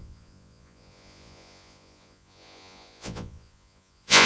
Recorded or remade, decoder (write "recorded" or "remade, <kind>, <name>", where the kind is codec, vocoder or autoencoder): remade, vocoder, Vocos